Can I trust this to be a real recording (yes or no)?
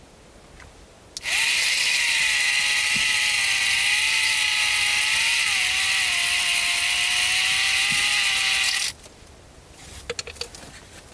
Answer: yes